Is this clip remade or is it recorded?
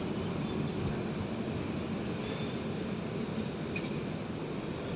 recorded